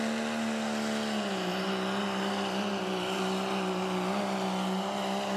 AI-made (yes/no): no